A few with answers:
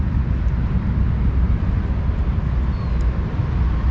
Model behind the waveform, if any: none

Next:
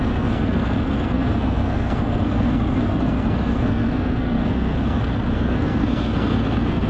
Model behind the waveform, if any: codec, SNAC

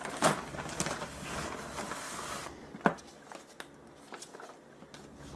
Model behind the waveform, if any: none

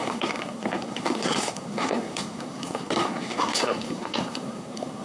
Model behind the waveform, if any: codec, SNAC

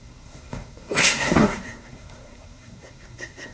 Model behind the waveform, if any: codec, SNAC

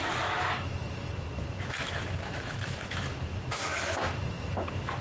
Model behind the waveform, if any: autoencoder, DAC-VAE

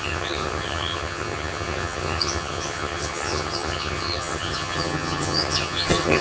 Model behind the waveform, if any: vocoder, HiFi-GAN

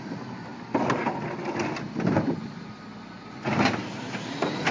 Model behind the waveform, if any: none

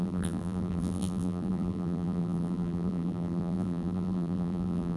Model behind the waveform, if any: vocoder, BigVGAN v2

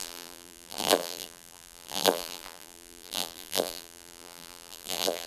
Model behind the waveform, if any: vocoder, BigVGAN v2